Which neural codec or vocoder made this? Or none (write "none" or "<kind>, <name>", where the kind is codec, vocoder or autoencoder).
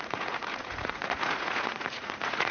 vocoder, Vocos